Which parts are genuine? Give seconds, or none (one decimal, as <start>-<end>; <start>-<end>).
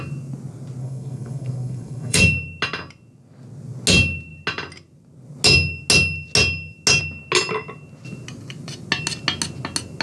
0.0-0.8; 2.2-10.0